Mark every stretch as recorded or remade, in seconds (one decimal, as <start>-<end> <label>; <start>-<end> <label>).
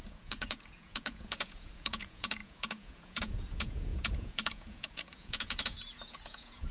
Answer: 0.0-6.7 remade